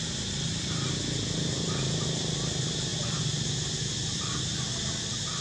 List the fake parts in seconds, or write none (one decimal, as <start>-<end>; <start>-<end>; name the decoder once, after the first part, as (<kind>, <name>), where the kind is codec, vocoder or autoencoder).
none

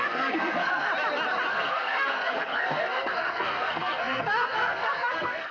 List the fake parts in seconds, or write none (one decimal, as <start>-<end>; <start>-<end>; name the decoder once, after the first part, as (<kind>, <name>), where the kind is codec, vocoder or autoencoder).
0.0-0.9 (codec, SNAC); 1.5-5.5

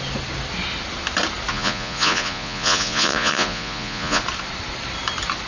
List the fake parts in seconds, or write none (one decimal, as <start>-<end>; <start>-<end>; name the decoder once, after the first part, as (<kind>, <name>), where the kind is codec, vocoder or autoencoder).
1.5-4.2 (vocoder, Vocos)

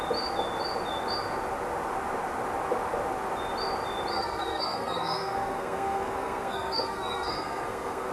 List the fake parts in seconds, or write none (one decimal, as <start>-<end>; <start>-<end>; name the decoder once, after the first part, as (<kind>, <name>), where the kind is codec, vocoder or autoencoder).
4.1-8.1 (codec, SNAC)